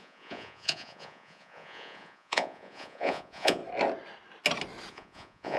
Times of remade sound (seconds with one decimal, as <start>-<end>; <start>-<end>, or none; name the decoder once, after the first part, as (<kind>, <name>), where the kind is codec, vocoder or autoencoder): 0.0-3.6 (vocoder, Vocos); 4.9-5.6